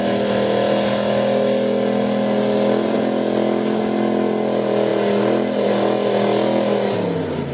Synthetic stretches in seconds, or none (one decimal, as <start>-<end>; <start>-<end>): none